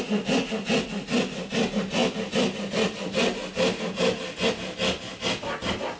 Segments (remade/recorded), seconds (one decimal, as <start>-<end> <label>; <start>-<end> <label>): 0.0-6.0 recorded